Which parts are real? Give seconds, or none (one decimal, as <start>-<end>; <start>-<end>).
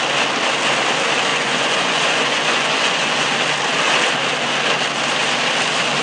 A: 0.0-1.3; 3.3-6.0